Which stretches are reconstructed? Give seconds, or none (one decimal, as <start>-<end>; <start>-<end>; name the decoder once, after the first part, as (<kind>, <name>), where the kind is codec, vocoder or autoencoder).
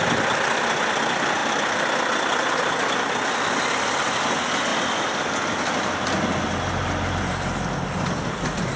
none